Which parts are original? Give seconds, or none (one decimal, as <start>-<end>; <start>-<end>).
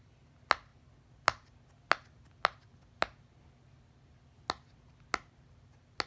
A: 0.0-6.1